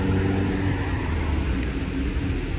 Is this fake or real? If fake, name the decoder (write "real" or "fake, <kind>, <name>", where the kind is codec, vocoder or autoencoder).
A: real